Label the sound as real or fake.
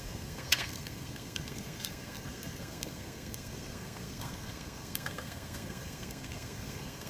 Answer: fake